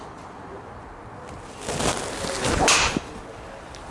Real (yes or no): yes